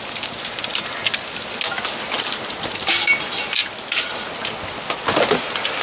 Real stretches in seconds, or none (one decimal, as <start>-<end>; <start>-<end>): 0.0-5.8